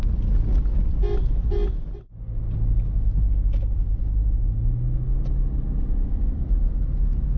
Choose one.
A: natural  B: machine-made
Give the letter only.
A